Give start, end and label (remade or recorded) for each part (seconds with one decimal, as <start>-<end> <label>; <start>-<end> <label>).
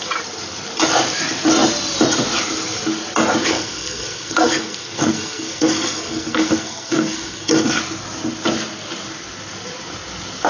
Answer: 0.0-3.4 recorded; 3.4-7.8 remade; 7.8-10.5 recorded